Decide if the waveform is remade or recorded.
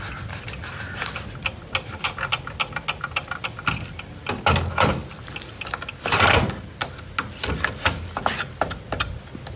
recorded